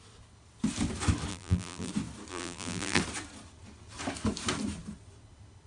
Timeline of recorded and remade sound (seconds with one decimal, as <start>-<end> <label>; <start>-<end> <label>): 0.0-1.3 recorded; 1.3-1.9 remade; 1.9-2.3 recorded; 2.3-3.0 remade; 3.0-5.7 recorded